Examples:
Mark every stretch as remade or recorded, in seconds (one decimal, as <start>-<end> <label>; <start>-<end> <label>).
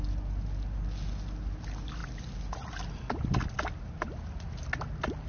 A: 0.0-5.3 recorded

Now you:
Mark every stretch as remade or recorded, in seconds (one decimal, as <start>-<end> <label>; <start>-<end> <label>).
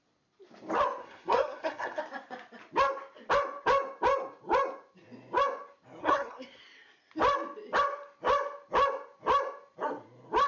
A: 0.0-1.0 recorded; 1.0-2.0 remade; 2.0-6.0 recorded; 6.0-6.6 remade; 6.6-10.5 recorded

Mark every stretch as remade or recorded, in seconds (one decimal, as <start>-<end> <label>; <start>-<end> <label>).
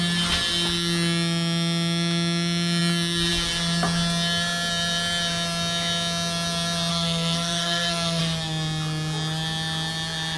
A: 0.0-6.9 recorded; 6.9-8.2 remade; 8.2-10.4 recorded